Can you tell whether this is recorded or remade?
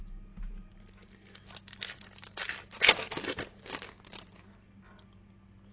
recorded